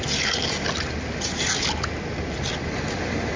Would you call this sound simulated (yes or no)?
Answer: no